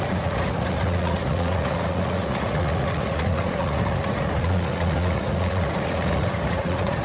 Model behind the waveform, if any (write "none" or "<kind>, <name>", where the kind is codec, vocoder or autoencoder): vocoder, Vocos